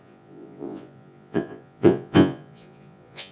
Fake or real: fake